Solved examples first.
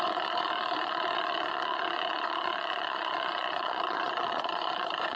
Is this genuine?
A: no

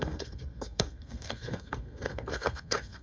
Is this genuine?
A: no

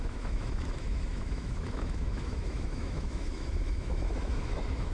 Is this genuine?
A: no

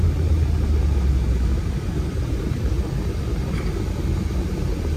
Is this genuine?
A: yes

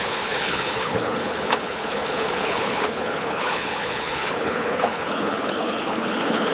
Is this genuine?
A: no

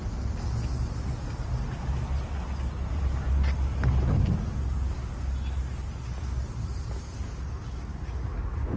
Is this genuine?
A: yes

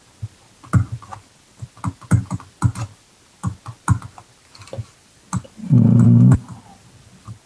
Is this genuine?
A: yes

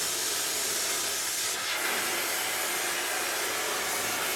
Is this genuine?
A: yes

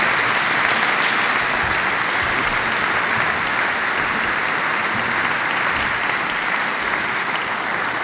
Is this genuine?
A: yes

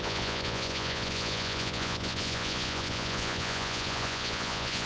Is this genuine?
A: no